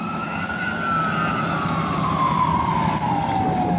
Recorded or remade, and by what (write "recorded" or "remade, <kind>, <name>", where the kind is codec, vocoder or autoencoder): recorded